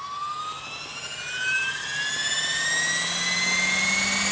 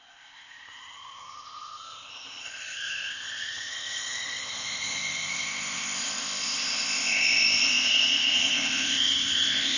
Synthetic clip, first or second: second